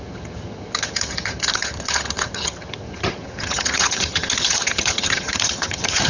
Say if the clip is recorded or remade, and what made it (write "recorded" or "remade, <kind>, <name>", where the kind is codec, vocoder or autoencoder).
remade, vocoder, HiFi-GAN